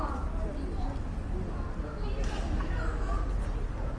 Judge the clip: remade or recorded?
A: recorded